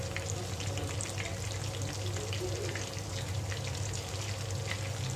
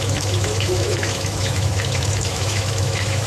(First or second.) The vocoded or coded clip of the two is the second